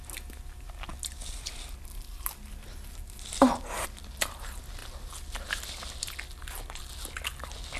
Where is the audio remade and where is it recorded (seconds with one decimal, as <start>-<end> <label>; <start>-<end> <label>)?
0.0-7.8 recorded